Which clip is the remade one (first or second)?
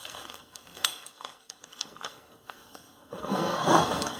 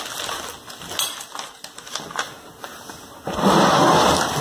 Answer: first